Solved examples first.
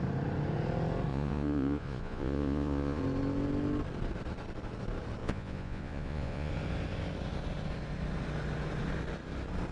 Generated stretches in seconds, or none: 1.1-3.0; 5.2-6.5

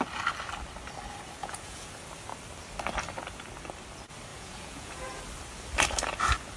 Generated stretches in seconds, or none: 1.4-1.9; 4.3-5.2

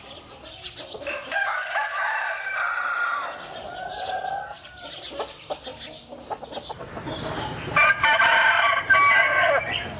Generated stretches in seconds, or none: none

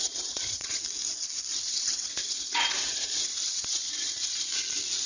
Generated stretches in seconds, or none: 0.0-0.8; 1.5-4.5

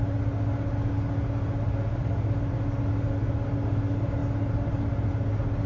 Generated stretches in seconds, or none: none

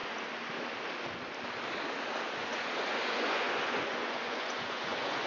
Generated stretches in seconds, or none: 2.4-5.3

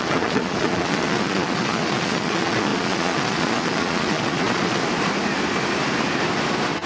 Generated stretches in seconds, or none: 0.0-4.8